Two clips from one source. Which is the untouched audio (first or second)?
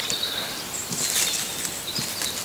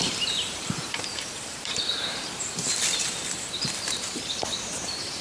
first